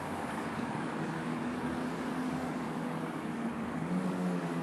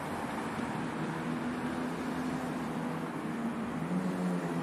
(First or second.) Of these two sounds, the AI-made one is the first